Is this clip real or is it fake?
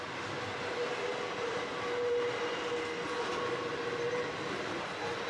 real